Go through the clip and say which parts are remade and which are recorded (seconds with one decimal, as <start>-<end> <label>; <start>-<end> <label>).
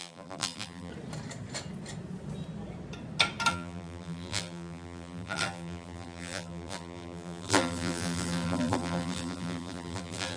0.0-0.9 remade; 0.9-3.5 recorded; 3.5-10.4 remade